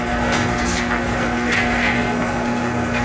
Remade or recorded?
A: remade